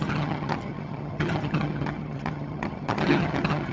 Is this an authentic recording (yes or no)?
no